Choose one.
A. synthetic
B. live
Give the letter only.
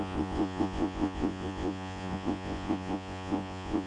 A